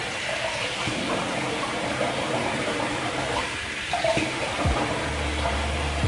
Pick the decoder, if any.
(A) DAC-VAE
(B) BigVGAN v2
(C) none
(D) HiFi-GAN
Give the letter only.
B